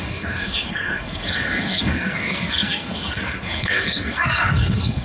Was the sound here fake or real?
fake